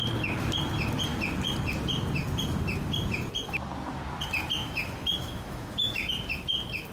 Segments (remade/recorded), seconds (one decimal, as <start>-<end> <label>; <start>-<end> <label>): 0.0-4.6 recorded; 4.6-6.1 remade; 6.1-6.9 recorded